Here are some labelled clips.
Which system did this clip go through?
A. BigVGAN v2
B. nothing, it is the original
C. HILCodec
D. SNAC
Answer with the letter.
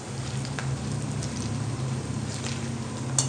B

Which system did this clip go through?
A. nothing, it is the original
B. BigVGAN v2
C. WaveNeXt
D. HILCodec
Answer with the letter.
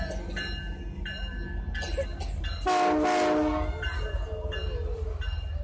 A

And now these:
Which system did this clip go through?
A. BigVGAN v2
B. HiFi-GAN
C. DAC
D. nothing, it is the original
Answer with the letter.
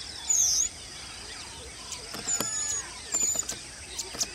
A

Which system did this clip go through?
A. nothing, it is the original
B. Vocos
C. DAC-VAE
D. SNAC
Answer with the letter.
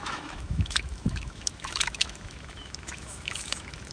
C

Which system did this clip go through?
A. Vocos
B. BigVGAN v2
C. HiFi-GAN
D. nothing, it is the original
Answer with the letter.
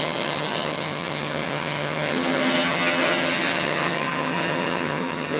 C